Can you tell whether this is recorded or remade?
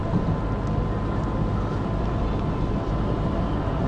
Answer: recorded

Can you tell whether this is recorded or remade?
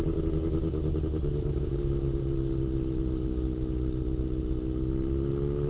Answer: recorded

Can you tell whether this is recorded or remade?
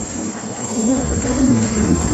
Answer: remade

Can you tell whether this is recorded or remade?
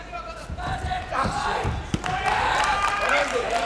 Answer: recorded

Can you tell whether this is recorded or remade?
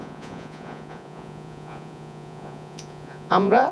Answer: remade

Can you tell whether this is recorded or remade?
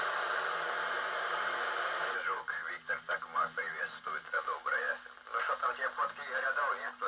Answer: recorded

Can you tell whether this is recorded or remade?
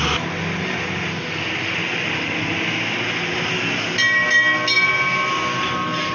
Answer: recorded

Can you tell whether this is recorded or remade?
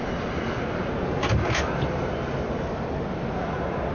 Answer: recorded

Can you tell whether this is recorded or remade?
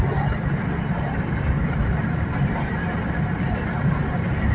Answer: recorded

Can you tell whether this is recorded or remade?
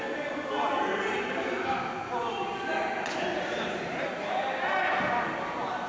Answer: recorded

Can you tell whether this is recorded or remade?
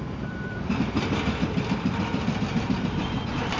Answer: remade